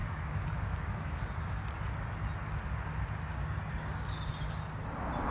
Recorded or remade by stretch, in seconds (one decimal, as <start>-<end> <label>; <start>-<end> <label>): 0.0-1.8 remade; 1.8-3.3 recorded; 3.3-4.3 remade; 4.3-5.3 recorded